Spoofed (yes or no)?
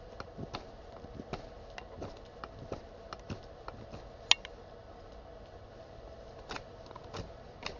no